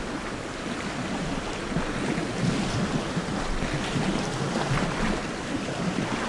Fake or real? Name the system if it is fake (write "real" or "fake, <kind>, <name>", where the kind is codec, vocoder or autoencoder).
real